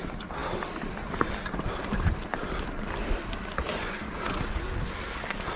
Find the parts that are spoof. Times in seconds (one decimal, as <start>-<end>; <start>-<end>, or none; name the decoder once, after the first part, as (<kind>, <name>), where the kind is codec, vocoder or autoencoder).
3.7-4.4 (vocoder, Vocos)